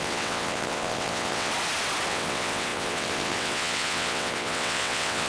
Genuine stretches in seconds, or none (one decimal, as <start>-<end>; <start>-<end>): 1.5-2.1